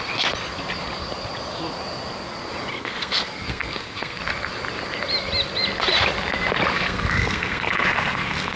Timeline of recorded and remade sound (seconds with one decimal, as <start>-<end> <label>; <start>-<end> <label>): 0.0-2.7 recorded; 2.7-4.2 remade; 4.2-6.7 recorded; 6.7-8.6 remade